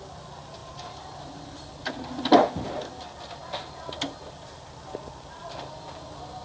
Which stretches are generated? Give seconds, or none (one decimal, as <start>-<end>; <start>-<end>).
0.6-1.7; 2.3-3.0